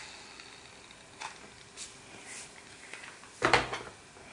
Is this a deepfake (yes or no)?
no